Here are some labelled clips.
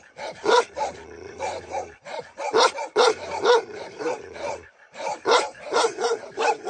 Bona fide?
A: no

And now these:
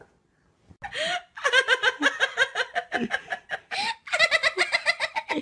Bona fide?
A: yes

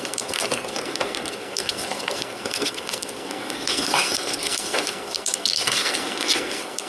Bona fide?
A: no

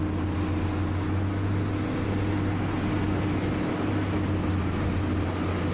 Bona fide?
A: yes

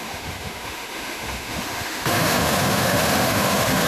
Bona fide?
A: no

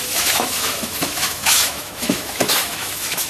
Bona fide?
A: no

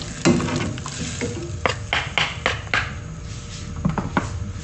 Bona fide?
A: yes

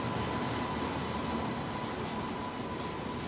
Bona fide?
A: yes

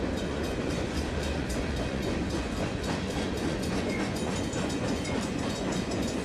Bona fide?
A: no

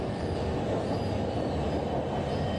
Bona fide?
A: yes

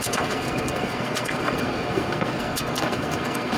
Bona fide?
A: no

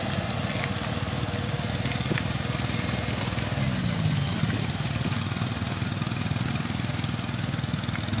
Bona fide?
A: yes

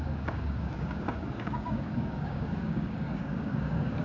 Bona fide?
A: no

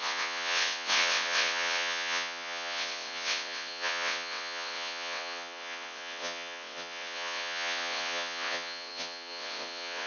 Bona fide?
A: no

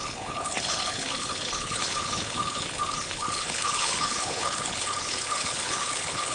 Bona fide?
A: no